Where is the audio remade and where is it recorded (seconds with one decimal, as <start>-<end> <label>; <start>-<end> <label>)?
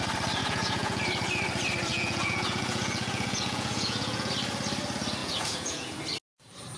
0.0-0.4 recorded; 0.4-1.0 remade; 1.0-1.9 recorded; 1.9-4.3 remade; 4.3-5.2 recorded; 5.2-6.0 remade; 6.0-6.8 recorded